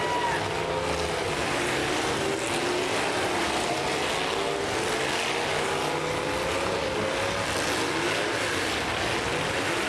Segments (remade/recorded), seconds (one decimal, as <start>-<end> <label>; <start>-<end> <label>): 0.0-9.9 recorded